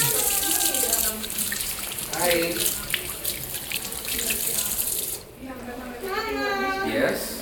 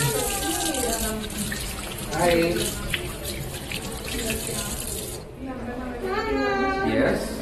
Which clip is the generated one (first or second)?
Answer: first